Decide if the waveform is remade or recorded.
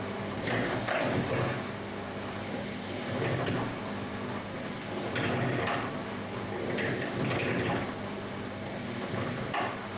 recorded